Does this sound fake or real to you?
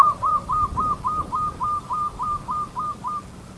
fake